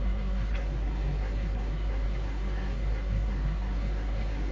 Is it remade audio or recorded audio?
remade